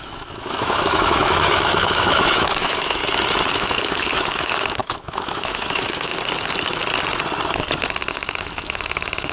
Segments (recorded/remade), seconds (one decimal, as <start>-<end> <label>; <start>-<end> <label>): 0.0-3.0 remade; 3.0-3.5 recorded; 3.5-6.1 remade; 6.1-8.1 recorded; 8.1-9.3 remade